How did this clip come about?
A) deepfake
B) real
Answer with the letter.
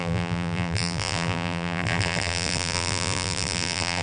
A